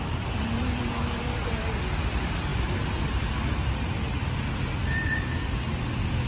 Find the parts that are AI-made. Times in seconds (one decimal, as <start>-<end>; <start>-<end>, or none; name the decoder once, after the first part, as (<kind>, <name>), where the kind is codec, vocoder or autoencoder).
none